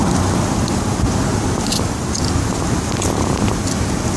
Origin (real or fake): real